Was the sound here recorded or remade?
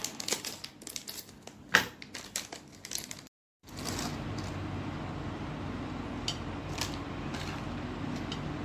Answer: recorded